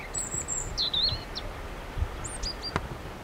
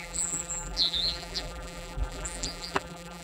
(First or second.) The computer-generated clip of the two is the second